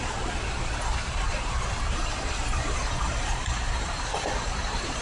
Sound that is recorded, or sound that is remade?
remade